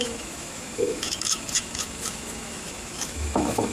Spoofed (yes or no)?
yes